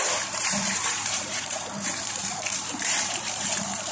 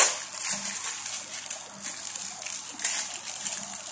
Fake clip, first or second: first